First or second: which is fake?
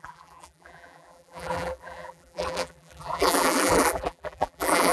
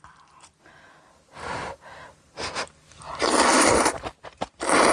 first